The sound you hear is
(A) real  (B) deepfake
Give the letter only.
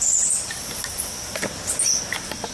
A